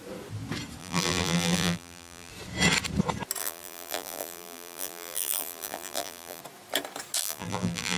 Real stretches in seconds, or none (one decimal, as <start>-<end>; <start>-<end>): 0.0-0.8; 2.3-3.4; 6.4-7.2